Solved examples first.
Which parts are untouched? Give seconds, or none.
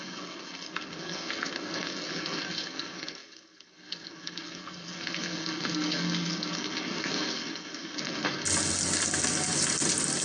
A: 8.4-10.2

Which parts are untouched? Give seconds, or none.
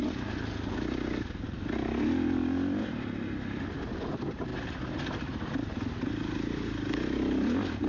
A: 0.0-7.9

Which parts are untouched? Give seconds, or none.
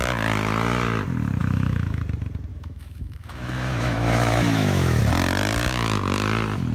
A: 0.0-1.4; 2.0-2.5; 5.0-6.7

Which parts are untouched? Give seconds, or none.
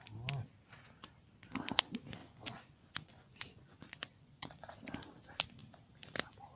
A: 0.0-2.2; 4.8-6.6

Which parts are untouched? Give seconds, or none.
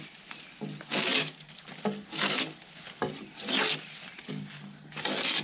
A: 0.0-5.4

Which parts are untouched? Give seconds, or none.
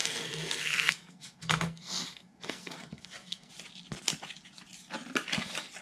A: 3.5-5.8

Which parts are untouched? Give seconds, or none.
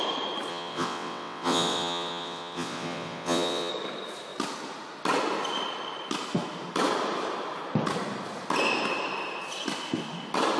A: 0.0-0.5; 3.7-10.6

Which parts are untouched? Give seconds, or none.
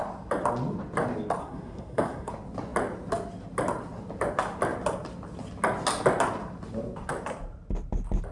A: 0.0-1.4; 2.3-8.3